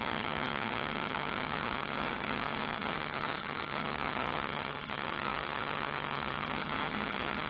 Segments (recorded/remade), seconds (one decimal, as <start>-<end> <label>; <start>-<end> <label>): 0.0-7.5 remade